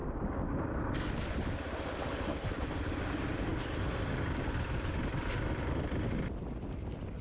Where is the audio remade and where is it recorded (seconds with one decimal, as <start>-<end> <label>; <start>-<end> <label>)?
0.0-7.2 recorded